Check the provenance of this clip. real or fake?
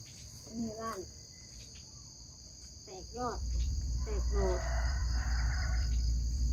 fake